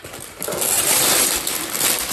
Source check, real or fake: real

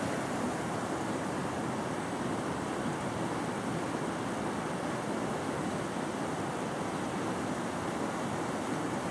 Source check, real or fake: real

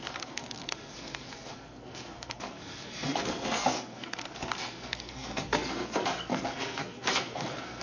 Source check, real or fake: fake